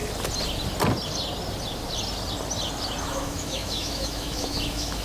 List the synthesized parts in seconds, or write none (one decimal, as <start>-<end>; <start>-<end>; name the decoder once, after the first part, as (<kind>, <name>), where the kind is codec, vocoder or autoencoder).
3.0-5.0 (autoencoder, DAC-VAE)